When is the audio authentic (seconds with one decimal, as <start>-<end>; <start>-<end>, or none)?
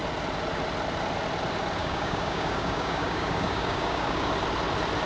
0.0-1.8; 4.3-5.1